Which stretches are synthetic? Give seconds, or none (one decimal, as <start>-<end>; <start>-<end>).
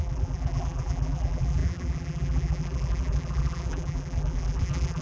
0.0-5.0